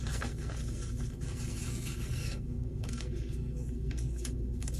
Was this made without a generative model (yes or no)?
no